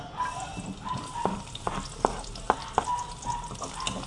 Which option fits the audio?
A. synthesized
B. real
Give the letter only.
B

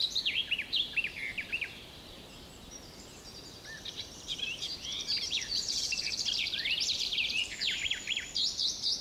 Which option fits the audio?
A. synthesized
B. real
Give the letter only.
A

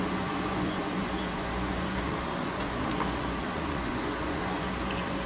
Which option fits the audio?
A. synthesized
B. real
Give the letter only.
A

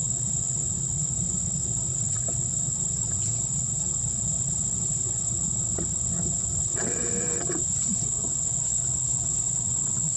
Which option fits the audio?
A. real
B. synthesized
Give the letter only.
B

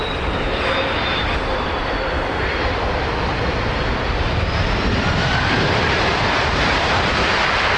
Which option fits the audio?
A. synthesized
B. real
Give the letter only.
A